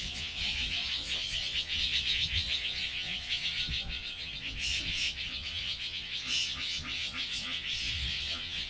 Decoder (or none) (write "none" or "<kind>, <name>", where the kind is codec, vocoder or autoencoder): vocoder, Vocos